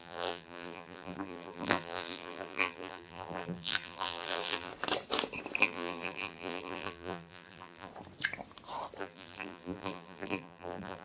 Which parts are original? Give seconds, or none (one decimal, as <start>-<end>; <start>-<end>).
4.7-5.6; 7.9-9.0